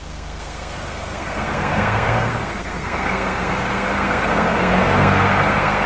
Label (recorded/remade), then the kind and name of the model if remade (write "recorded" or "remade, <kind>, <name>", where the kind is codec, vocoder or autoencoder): remade, codec, SNAC